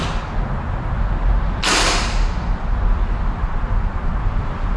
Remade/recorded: recorded